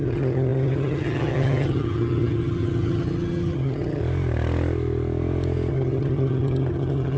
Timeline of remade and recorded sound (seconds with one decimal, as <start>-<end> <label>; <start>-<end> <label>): 0.0-4.0 remade; 4.0-5.7 recorded; 5.7-7.2 remade

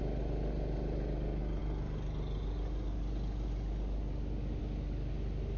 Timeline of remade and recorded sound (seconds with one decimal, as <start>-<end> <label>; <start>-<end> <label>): 0.0-5.6 recorded

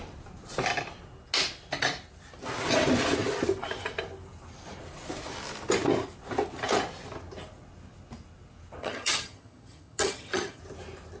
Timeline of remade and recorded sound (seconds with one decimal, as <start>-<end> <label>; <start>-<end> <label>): 0.0-8.8 recorded; 8.8-10.6 remade; 10.6-11.2 recorded

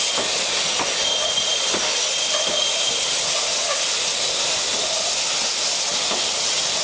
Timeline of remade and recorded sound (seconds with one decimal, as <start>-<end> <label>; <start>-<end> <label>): 0.0-6.8 recorded

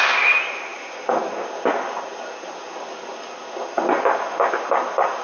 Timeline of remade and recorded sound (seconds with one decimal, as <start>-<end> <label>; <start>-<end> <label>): 0.0-5.2 recorded

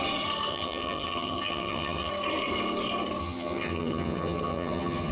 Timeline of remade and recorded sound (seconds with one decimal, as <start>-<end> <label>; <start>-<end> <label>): 0.0-0.5 recorded; 0.5-2.1 remade; 2.1-3.2 recorded; 3.2-5.1 remade

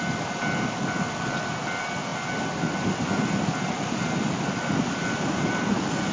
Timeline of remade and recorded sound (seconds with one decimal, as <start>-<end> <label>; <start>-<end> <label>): 0.0-6.1 recorded

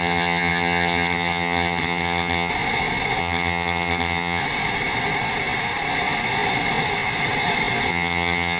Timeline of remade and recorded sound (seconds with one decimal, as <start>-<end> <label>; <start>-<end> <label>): 0.0-2.5 remade; 2.5-3.2 recorded; 3.2-4.4 remade; 4.4-7.9 recorded; 7.9-8.6 remade